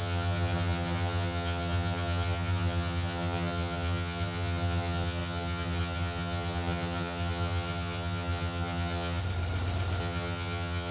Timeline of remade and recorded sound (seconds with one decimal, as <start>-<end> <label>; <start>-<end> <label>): 0.0-9.2 remade; 9.2-10.0 recorded; 10.0-10.9 remade